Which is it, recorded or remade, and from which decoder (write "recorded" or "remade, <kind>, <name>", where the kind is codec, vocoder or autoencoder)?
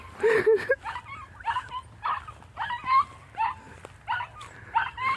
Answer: recorded